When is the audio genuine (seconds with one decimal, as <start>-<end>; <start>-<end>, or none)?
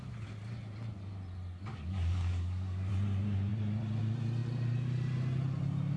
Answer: 0.0-1.7; 2.9-6.0